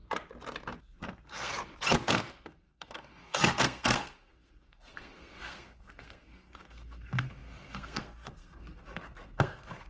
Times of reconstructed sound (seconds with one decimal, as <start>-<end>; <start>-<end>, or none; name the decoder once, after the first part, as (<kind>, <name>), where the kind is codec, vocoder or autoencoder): 0.8-1.5 (codec, SNAC); 2.1-9.9